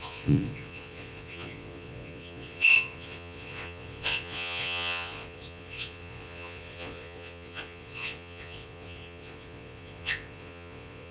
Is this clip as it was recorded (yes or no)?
no